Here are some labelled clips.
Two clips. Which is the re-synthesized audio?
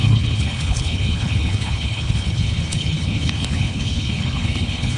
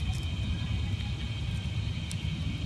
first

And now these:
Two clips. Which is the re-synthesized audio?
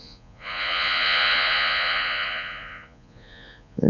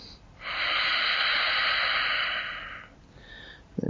first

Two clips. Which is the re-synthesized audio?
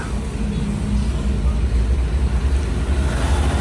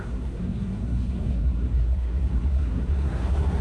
second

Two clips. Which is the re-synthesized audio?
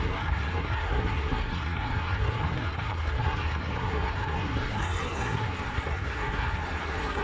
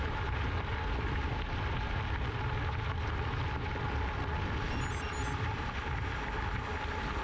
first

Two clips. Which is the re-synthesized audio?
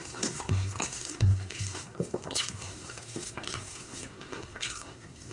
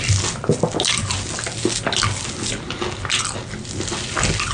first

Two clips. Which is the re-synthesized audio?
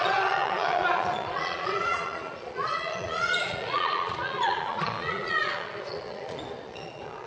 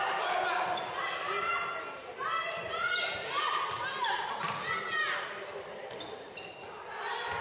first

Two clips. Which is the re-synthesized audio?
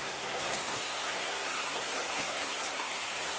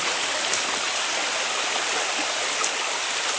first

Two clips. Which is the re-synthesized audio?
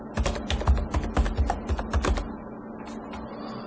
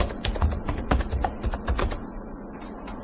second